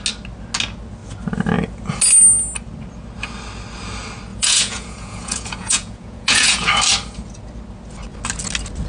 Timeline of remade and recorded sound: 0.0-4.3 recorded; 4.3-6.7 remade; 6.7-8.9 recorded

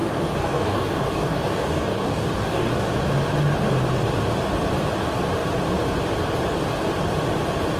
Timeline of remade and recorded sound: 0.0-2.9 remade; 2.9-7.8 recorded

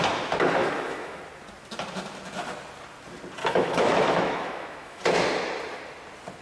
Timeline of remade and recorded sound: 0.0-0.6 recorded; 0.6-1.2 remade; 1.2-3.4 recorded; 3.4-5.0 remade; 5.0-6.4 recorded

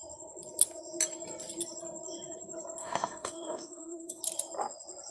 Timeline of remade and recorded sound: 0.0-2.8 recorded; 2.8-4.2 remade; 4.2-5.1 recorded

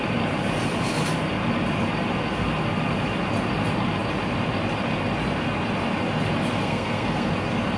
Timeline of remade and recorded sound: 0.0-6.6 recorded; 6.6-7.3 remade; 7.3-7.8 recorded

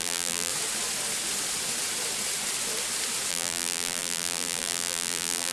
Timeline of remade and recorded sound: 0.0-0.5 remade; 0.5-3.3 recorded; 3.3-5.5 remade

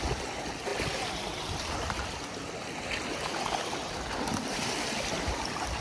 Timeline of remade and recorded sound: 0.0-5.8 recorded

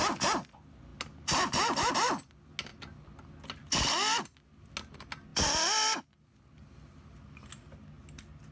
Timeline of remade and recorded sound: 0.0-8.5 recorded